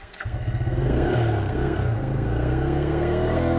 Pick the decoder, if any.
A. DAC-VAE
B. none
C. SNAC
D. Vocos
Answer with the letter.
C